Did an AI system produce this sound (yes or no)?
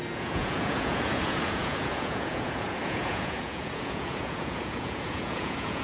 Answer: yes